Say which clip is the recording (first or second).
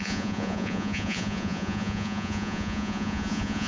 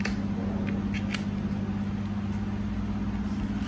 second